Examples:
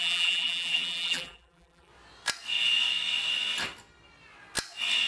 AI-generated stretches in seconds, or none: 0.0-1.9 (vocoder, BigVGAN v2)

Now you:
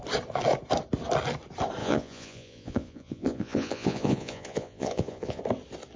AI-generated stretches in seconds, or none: 1.8-5.4 (vocoder, Vocos)

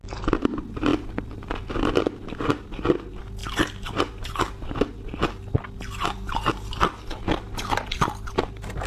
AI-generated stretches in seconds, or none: 0.9-2.8 (vocoder, BigVGAN v2)

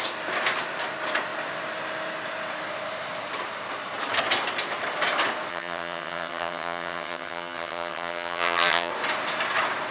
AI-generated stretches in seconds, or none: 5.5-8.9 (vocoder, HiFi-GAN)